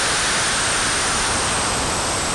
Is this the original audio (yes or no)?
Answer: yes